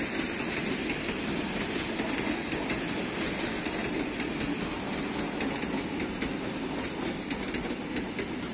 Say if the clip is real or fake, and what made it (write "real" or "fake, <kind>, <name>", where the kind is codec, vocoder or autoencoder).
real